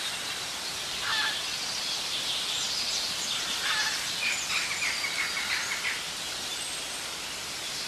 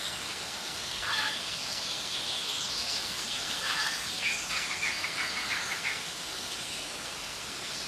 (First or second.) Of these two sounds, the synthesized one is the second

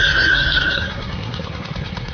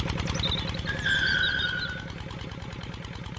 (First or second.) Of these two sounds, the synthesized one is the first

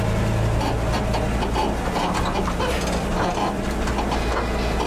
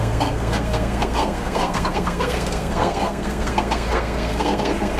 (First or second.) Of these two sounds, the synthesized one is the second